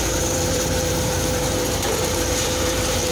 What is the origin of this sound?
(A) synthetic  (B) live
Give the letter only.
A